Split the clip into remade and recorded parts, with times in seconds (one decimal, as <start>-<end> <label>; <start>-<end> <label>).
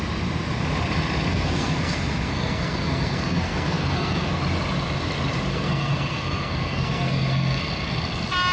0.0-1.3 recorded; 1.3-4.4 remade; 4.4-5.5 recorded; 5.5-7.7 remade; 7.7-8.5 recorded